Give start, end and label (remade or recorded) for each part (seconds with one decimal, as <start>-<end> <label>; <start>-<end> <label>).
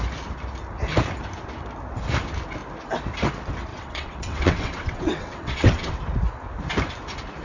0.0-3.7 recorded; 3.7-5.9 remade; 5.9-7.4 recorded